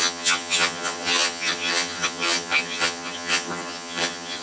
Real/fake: fake